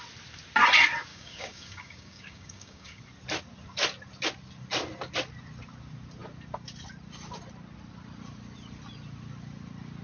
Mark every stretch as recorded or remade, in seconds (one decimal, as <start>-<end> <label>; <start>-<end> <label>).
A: 0.0-1.1 recorded; 1.1-3.0 remade; 3.0-10.0 recorded